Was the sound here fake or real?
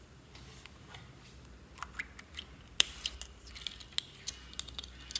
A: real